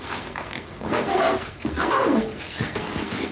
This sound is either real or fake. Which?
fake